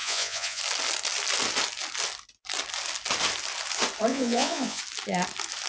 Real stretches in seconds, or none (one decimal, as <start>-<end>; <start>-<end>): 0.6-4.1; 4.8-5.7